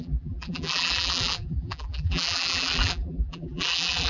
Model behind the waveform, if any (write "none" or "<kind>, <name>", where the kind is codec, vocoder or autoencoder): vocoder, BigVGAN v2